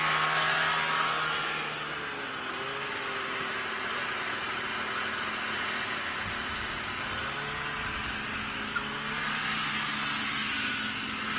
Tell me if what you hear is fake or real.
real